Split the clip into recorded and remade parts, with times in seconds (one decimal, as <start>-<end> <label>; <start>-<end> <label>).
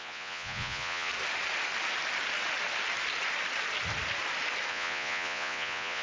0.0-1.1 remade; 1.1-4.7 recorded; 4.7-6.0 remade